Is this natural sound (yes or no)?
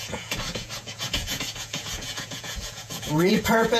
no